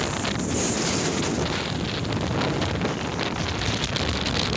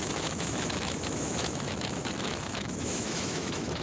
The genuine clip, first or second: first